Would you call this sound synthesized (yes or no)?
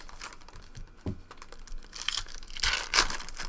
no